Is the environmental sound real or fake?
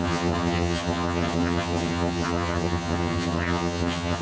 fake